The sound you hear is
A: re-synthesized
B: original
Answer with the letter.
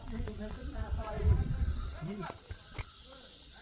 A